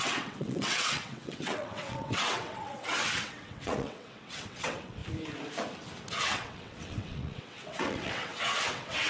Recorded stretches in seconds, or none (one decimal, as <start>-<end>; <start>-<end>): 5.0-6.2